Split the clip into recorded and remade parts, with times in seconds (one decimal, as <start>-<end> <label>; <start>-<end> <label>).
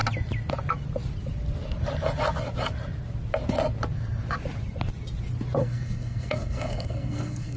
0.0-5.6 recorded; 5.6-7.6 remade